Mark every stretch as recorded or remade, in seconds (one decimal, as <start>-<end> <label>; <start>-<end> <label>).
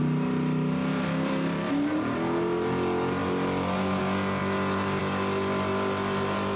0.0-0.9 recorded; 0.9-1.7 remade; 1.7-4.4 recorded; 4.4-5.0 remade; 5.0-6.6 recorded